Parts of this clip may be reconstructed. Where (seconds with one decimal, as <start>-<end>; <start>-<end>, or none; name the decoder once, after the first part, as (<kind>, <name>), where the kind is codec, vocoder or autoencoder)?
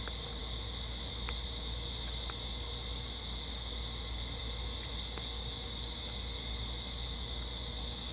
none